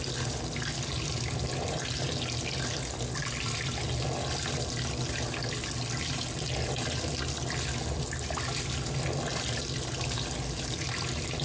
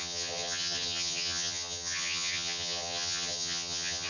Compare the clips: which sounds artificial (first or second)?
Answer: second